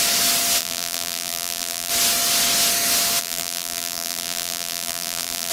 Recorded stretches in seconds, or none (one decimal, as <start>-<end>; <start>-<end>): 0.0-0.6; 1.9-3.2